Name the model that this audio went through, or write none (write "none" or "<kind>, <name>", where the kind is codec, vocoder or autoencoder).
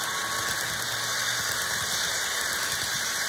none